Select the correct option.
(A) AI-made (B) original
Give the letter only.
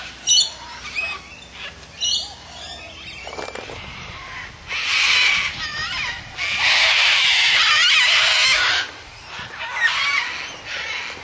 B